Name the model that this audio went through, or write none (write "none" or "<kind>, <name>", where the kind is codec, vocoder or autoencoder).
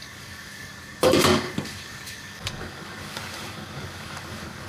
codec, DAC